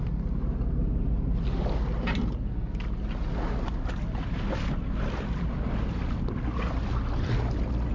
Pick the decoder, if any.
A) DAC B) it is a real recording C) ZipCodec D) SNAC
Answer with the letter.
B